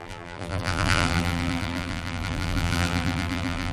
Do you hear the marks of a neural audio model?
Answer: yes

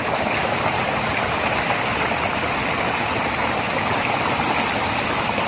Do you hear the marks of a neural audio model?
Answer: no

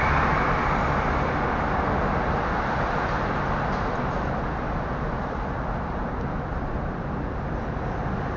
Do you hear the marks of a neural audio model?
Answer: no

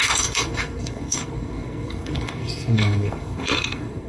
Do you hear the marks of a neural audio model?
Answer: yes